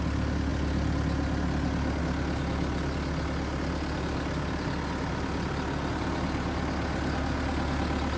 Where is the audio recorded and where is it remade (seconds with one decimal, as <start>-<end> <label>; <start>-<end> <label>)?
0.0-8.2 recorded

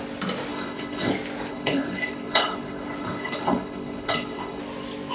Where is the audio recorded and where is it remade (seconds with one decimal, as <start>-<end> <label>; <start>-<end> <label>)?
0.0-0.5 recorded; 0.5-1.1 remade; 1.1-1.5 recorded; 1.5-4.6 remade; 4.6-5.1 recorded

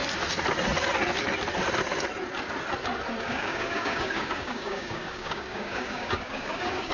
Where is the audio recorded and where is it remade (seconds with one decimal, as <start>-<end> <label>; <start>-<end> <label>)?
0.0-3.2 recorded; 3.2-6.9 remade

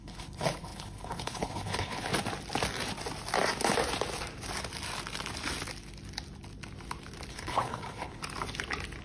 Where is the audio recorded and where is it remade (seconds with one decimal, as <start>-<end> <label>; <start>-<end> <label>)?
0.0-2.1 remade; 2.1-7.3 recorded; 7.3-8.2 remade; 8.2-9.0 recorded

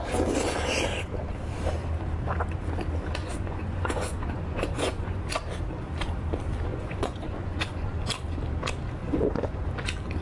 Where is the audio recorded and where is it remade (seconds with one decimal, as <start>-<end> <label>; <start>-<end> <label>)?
0.0-3.2 recorded; 3.2-5.2 remade; 5.2-6.7 recorded; 6.7-7.9 remade; 7.9-9.0 recorded; 9.0-9.7 remade; 9.7-10.2 recorded

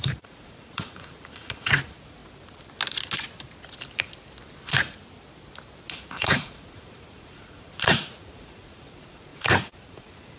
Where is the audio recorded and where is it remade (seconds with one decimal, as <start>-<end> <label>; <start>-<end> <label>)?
0.0-2.2 remade; 2.2-6.0 recorded; 6.0-10.4 remade